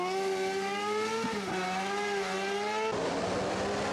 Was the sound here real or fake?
real